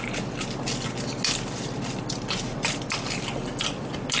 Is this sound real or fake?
real